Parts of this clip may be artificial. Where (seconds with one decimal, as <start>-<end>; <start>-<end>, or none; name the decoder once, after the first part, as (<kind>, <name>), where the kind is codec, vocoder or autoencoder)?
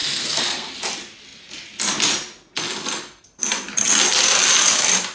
0.0-0.7 (codec, SNAC)